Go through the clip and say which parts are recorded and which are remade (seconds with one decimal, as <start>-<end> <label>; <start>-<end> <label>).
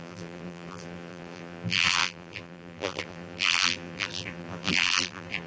0.0-5.5 remade